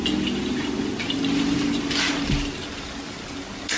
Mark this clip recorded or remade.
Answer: recorded